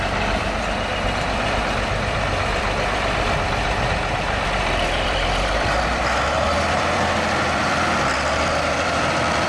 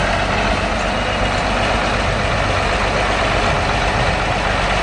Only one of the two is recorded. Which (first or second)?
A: second